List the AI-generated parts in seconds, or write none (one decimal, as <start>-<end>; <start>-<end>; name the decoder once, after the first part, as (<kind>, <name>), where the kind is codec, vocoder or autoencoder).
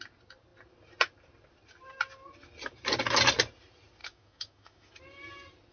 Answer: 4.0-5.0 (autoencoder, DAC-VAE)